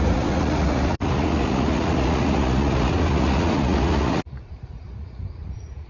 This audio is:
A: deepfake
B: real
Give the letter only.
A